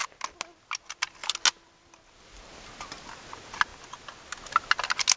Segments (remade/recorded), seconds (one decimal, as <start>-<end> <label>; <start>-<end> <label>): 0.0-5.2 recorded